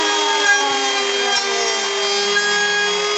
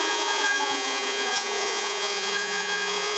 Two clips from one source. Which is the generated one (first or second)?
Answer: second